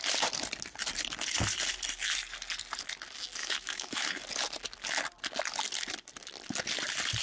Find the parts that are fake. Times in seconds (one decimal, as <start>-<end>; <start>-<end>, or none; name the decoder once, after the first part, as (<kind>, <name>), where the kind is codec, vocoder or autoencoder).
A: 3.4-4.2 (autoencoder, DAC-VAE)